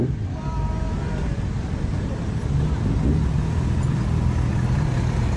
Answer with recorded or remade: recorded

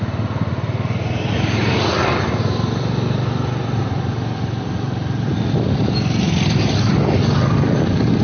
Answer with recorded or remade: recorded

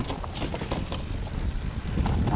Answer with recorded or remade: recorded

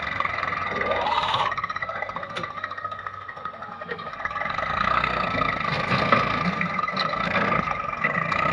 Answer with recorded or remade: remade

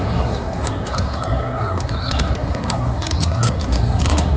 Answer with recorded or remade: remade